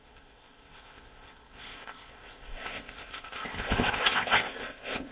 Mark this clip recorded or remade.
remade